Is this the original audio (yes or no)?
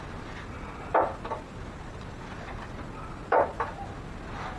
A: yes